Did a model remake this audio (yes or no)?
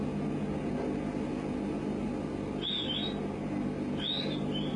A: no